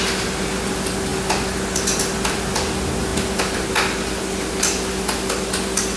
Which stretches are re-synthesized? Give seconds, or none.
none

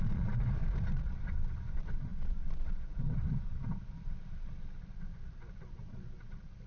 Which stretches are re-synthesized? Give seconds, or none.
0.0-6.7

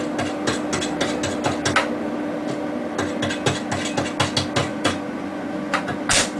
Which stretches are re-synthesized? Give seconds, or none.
4.6-6.0

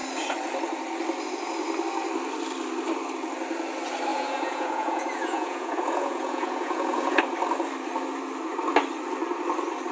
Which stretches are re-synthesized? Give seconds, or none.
4.1-7.2

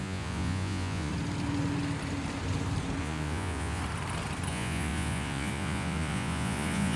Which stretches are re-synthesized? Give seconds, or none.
0.0-1.1; 3.0-3.8; 4.5-7.0